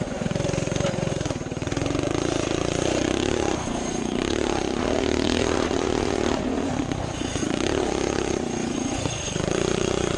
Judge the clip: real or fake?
fake